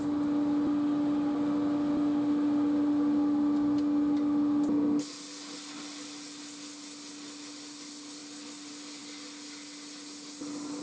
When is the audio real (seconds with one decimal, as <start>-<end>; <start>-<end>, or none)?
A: 0.0-10.8